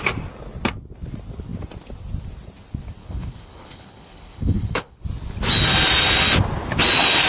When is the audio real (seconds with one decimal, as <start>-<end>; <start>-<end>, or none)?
0.0-3.0; 5.0-7.3